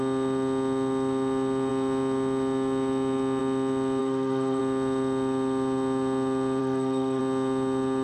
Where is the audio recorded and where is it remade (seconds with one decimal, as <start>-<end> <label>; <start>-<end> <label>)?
0.0-4.0 recorded; 4.0-4.6 remade; 4.6-6.6 recorded; 6.6-7.2 remade; 7.2-8.0 recorded